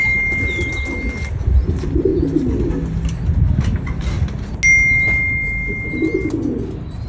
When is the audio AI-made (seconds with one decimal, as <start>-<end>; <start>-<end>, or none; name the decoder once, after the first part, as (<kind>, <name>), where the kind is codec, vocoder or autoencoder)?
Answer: none